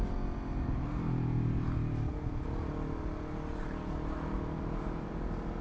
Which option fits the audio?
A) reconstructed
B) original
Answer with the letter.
B